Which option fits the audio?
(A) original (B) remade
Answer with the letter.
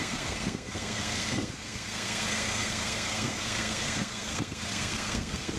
B